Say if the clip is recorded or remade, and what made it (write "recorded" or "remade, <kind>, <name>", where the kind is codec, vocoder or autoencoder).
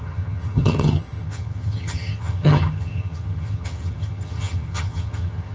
remade, vocoder, HiFi-GAN